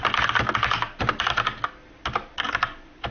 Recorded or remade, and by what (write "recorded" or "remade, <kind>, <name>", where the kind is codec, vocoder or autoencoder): recorded